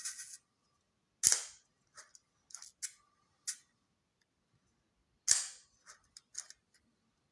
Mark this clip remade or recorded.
recorded